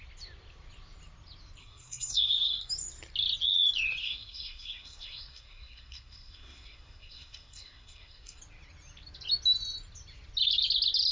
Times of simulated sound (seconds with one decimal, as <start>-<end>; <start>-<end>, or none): 1.6-2.7; 4.0-8.4